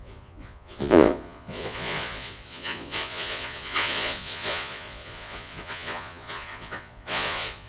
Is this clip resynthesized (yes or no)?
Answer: yes